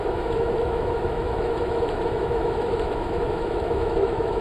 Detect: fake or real fake